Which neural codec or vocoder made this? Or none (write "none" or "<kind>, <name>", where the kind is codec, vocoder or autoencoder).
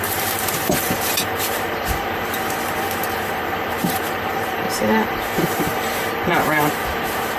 vocoder, BigVGAN v2